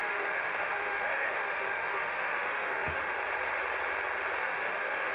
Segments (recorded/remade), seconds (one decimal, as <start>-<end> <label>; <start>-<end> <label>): 0.0-3.1 remade; 3.1-4.4 recorded; 4.4-5.1 remade